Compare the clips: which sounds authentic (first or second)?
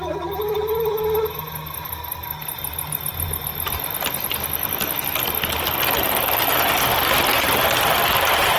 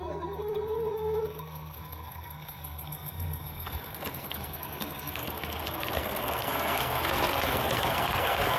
first